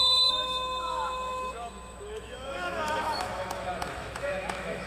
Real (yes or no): no